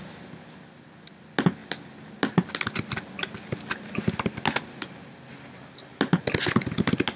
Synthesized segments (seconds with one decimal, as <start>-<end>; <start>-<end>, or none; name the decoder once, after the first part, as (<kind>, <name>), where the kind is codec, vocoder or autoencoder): none